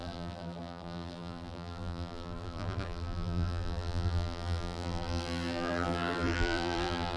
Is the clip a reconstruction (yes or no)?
yes